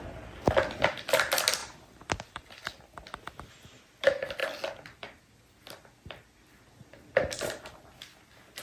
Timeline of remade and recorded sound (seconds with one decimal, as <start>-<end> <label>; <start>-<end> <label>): 0.0-8.6 recorded

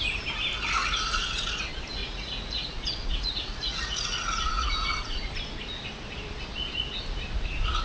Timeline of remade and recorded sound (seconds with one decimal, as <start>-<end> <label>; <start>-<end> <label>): 0.0-0.8 recorded; 0.8-1.6 remade; 1.6-2.0 recorded; 2.0-5.3 remade; 5.3-7.8 recorded